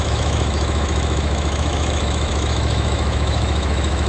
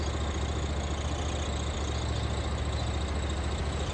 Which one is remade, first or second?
first